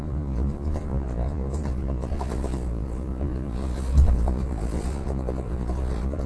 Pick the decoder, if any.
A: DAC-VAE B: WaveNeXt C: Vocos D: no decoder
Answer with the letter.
C